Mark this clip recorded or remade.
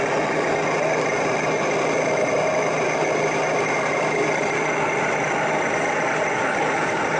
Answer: recorded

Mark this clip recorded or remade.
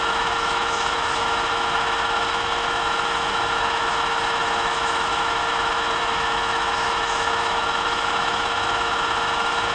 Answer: remade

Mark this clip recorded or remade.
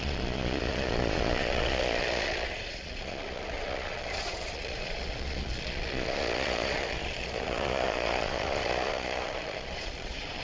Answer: remade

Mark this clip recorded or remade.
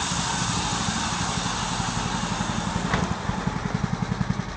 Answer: recorded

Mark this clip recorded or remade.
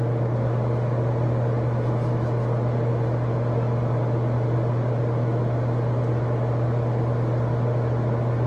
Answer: recorded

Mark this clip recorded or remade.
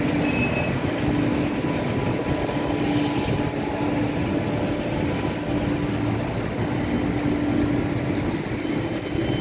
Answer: recorded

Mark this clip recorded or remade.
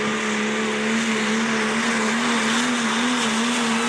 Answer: recorded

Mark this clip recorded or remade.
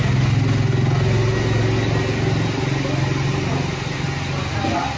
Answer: recorded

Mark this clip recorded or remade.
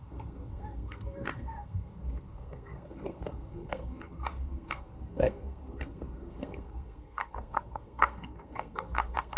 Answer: remade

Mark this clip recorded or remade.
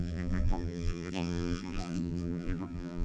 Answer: remade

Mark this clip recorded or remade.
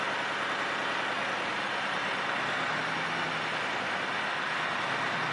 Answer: recorded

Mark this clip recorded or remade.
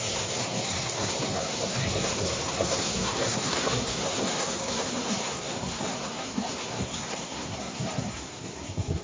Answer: remade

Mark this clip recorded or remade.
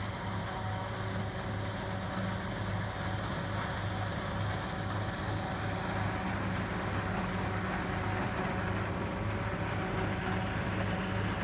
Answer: recorded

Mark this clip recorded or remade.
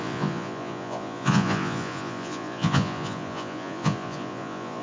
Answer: remade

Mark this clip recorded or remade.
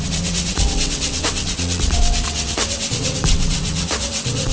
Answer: remade